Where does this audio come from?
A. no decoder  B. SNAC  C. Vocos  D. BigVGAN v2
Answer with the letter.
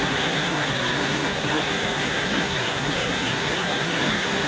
B